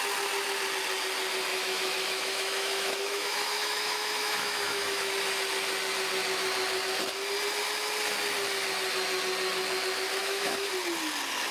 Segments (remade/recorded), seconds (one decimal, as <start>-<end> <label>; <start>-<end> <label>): 0.0-1.5 recorded; 1.5-5.1 remade; 5.1-10.2 recorded; 10.2-10.7 remade; 10.7-11.5 recorded